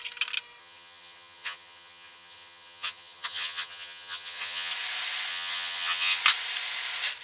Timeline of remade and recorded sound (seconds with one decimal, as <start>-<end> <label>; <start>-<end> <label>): 0.0-0.6 recorded; 0.6-4.7 remade; 4.7-5.3 recorded; 5.3-6.2 remade; 6.2-7.2 recorded